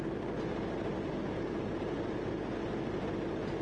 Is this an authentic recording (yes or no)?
yes